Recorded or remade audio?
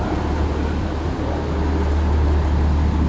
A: recorded